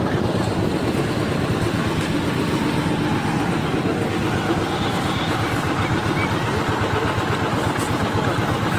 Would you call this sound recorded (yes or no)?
yes